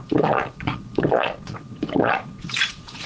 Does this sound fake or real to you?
fake